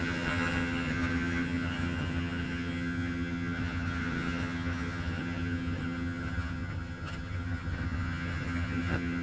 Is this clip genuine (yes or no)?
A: no